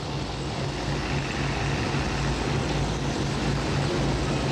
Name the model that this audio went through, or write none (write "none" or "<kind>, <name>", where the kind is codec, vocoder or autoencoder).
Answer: none